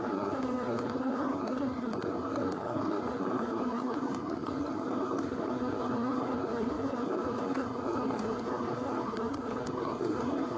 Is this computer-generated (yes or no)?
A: yes